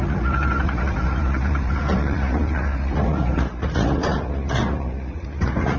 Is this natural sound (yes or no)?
no